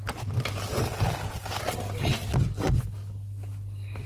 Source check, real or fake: real